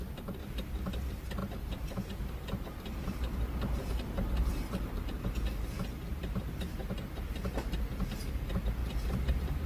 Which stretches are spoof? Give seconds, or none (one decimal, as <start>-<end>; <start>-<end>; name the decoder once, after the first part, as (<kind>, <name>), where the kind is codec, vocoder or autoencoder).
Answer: 1.4-4.9 (vocoder, BigVGAN v2); 6.1-6.9